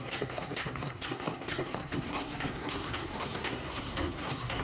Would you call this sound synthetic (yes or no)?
yes